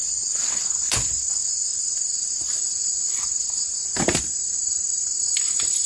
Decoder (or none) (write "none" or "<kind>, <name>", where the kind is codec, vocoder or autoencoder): none